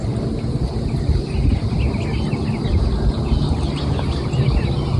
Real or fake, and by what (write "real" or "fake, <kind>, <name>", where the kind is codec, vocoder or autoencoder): real